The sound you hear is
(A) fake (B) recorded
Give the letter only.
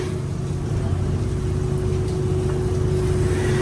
B